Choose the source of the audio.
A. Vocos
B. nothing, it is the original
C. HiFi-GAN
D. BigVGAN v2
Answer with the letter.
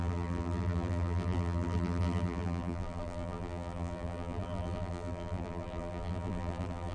D